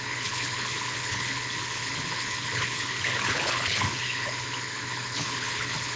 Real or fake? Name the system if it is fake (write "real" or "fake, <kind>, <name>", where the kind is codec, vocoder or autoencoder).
fake, codec, HILCodec